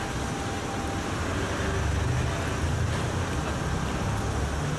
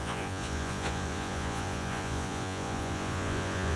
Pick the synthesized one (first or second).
second